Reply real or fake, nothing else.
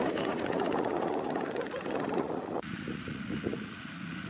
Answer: fake